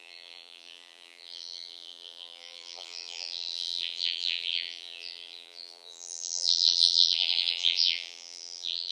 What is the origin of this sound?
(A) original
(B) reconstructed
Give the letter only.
B